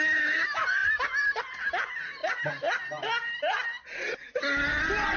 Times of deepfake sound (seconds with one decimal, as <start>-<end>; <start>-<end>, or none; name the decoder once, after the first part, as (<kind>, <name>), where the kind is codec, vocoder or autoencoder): none